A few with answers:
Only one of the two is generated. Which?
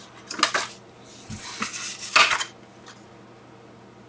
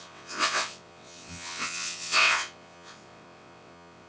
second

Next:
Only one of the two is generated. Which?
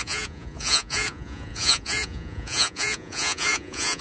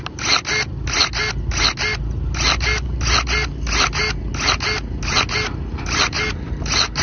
first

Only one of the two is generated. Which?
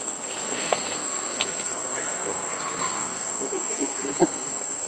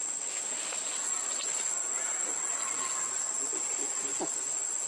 first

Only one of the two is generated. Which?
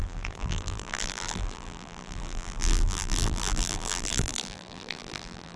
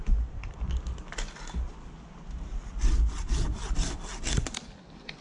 first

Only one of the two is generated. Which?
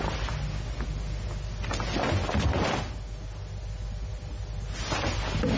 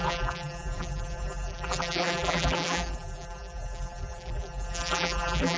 second